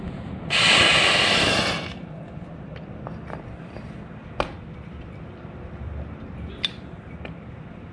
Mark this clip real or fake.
fake